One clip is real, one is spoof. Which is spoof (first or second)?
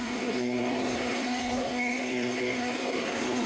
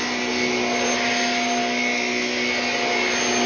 first